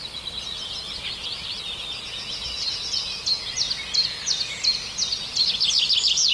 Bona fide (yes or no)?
yes